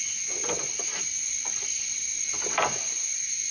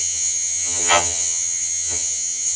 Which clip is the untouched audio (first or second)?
first